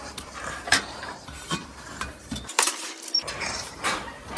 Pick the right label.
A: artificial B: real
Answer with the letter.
A